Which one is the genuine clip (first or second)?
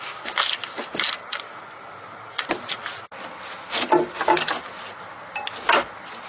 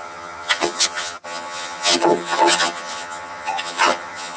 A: first